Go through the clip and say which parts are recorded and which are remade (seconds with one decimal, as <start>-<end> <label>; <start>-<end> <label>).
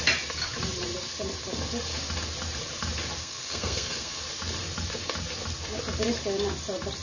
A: 0.0-3.2 recorded; 3.2-4.2 remade; 4.2-7.0 recorded